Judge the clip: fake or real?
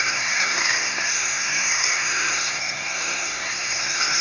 fake